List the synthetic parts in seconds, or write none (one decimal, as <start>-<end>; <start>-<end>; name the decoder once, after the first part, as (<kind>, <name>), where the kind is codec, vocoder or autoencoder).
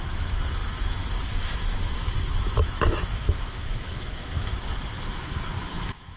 0.0-4.5 (autoencoder, DAC-VAE); 5.7-6.2